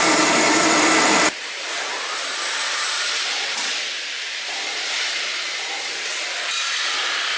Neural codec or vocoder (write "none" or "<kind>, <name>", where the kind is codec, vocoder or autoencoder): vocoder, BigVGAN v2